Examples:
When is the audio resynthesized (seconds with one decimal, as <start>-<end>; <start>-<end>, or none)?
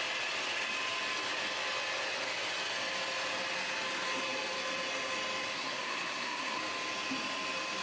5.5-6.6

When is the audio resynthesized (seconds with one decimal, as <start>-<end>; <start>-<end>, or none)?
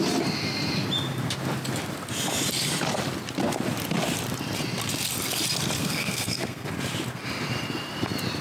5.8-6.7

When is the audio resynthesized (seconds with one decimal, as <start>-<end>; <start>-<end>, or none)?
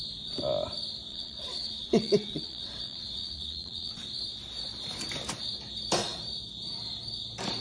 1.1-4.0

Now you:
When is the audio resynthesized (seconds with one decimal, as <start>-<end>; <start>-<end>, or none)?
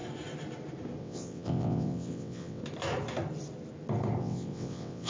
1.0-2.6; 4.2-5.1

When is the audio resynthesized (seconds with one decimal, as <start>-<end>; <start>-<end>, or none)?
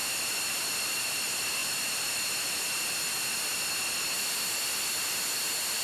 none